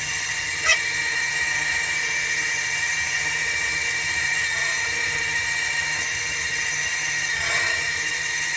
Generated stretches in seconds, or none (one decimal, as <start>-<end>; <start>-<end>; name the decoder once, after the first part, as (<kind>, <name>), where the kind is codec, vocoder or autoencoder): 0.0-8.6 (vocoder, HiFi-GAN)